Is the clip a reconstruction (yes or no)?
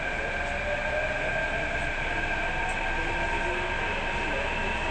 no